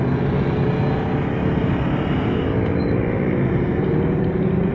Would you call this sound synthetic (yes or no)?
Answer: no